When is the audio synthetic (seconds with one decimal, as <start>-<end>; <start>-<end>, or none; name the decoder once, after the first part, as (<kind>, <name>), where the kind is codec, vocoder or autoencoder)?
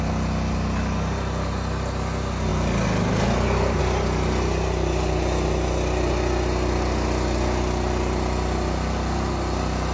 none